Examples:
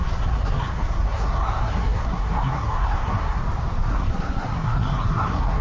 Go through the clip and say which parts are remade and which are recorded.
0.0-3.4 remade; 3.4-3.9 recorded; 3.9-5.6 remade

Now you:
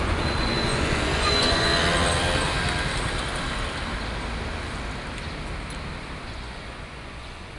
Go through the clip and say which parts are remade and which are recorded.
0.0-1.7 remade; 1.7-6.2 recorded; 6.2-7.6 remade